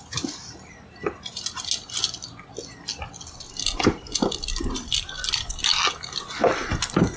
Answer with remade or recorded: recorded